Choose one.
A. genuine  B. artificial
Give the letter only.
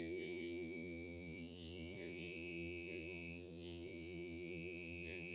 B